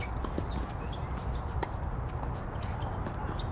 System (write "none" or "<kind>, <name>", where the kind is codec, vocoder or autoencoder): none